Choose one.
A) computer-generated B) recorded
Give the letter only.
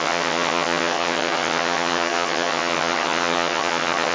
A